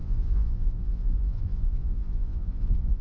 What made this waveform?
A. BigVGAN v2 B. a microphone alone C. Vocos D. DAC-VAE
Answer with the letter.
C